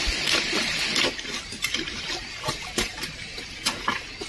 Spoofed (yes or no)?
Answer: no